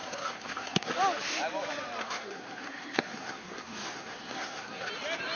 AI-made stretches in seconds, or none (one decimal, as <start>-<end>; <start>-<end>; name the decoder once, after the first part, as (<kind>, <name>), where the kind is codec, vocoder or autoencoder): 0.0-0.9 (codec, SNAC); 2.0-4.9